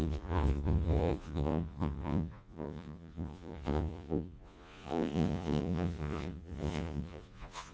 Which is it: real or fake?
fake